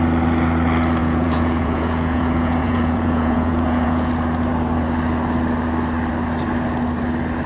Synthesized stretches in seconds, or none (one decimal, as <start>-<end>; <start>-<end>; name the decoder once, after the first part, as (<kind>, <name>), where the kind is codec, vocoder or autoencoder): 1.0-4.1 (vocoder, Vocos)